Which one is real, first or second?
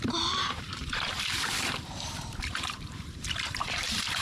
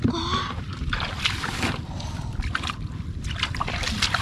second